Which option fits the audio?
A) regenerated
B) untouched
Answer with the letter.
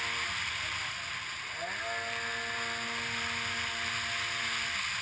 B